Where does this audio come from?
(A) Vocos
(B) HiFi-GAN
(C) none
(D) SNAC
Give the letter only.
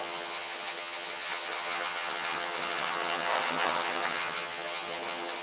B